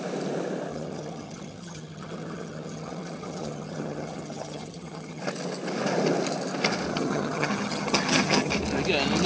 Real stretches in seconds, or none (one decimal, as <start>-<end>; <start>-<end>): 0.0-0.7; 5.2-6.9; 8.5-9.3